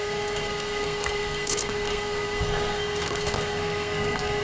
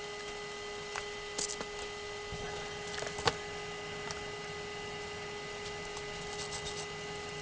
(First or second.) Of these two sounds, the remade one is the first